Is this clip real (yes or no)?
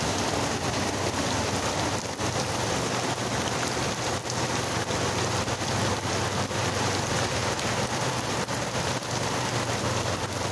no